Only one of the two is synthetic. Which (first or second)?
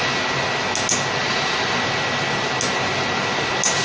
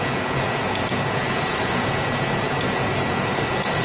second